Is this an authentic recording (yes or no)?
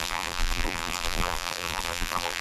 no